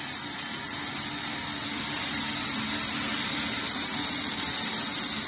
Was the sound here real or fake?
real